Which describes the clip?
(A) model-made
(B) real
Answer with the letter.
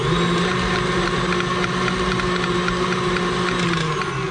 B